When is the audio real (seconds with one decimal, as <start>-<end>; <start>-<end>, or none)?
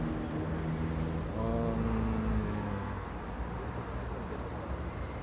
0.0-2.3; 3.1-5.2